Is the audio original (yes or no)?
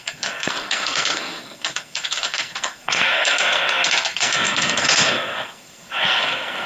no